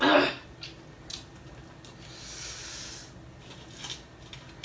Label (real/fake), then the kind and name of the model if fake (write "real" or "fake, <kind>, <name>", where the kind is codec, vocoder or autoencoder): real